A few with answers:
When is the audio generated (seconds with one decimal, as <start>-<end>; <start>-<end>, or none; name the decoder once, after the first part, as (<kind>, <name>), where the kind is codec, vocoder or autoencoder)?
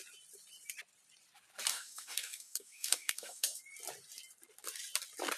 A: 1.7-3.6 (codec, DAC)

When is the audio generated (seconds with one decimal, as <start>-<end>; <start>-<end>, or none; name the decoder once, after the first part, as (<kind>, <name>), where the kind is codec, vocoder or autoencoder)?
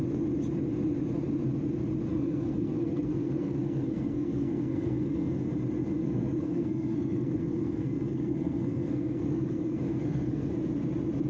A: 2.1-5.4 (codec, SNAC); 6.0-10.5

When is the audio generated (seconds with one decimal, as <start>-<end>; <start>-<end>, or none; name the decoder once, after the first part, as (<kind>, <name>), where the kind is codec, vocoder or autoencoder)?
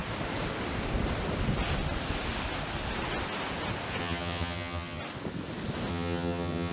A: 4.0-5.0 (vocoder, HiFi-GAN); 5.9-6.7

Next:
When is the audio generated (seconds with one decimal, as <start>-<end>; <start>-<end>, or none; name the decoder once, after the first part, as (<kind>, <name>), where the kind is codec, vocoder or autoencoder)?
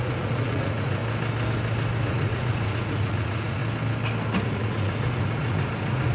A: 0.0-1.0 (vocoder, Vocos); 2.1-3.6; 4.4-6.1